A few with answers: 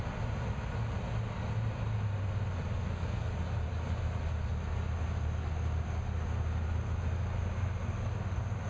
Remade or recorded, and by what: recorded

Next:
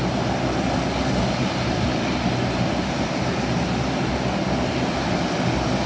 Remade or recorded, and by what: recorded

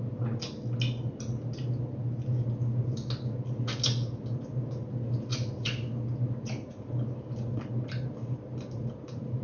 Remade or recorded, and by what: recorded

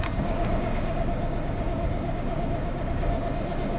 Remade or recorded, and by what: remade, codec, DAC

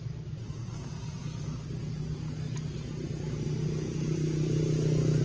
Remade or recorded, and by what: recorded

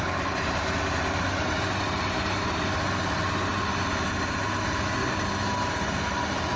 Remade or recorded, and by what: recorded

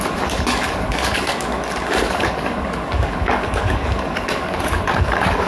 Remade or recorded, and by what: remade, codec, DAC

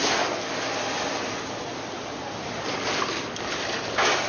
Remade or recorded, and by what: recorded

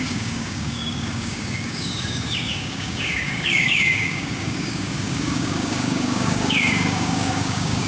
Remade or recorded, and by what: remade, codec, DAC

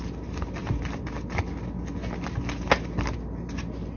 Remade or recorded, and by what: recorded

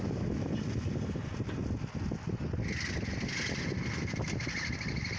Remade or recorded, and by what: recorded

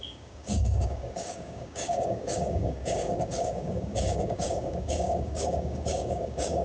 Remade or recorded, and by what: remade, codec, DAC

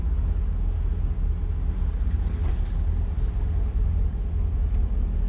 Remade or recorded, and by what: recorded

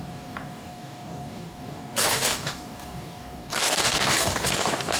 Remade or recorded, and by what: remade, codec, DAC